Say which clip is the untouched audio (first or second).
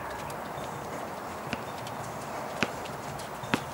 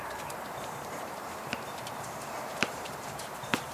first